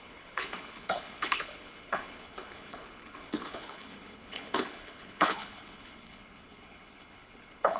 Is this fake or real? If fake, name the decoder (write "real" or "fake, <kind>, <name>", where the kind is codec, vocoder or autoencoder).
fake, codec, HILCodec